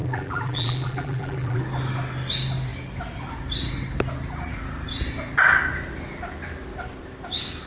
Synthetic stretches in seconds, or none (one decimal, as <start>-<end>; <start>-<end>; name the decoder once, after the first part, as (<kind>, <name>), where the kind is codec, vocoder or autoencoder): 0.0-1.6 (vocoder, BigVGAN v2)